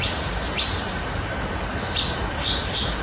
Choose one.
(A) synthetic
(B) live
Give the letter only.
B